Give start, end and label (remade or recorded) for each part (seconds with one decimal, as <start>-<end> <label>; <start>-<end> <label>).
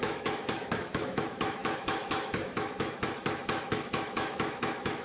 0.0-5.0 remade